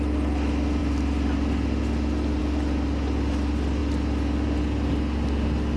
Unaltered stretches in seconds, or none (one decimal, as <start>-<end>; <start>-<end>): 0.0-5.8